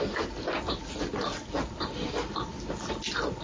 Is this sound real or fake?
real